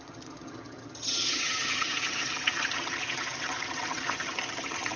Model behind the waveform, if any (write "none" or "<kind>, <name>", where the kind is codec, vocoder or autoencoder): vocoder, HiFi-GAN